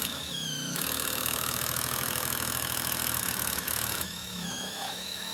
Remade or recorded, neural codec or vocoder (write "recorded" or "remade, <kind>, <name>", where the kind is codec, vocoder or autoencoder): remade, autoencoder, DAC-VAE